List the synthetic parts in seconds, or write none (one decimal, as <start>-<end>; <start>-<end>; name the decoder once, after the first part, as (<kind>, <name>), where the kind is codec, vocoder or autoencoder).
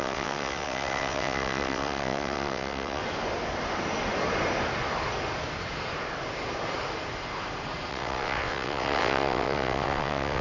0.0-3.0 (vocoder, WaveNeXt); 7.9-10.4